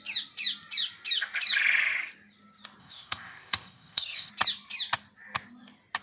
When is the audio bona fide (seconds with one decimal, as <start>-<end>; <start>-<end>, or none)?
0.0-2.8; 4.3-6.0